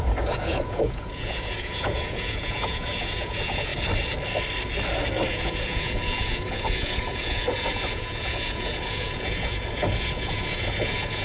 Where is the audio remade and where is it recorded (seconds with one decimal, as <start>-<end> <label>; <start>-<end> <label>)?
0.0-3.7 remade; 3.7-5.3 recorded; 5.3-11.2 remade